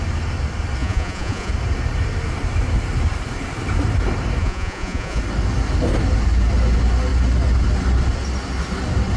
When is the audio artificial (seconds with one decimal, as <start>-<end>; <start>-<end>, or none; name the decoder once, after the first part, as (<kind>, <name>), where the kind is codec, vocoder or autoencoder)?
0.8-1.5 (vocoder, Vocos); 4.4-5.2